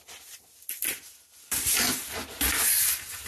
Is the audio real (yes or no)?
yes